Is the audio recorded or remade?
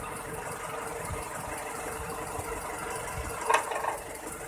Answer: recorded